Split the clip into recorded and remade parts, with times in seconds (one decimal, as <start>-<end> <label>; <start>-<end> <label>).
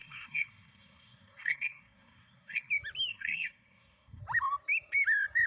0.0-2.7 remade; 2.7-3.1 recorded; 3.1-4.2 remade; 4.2-5.5 recorded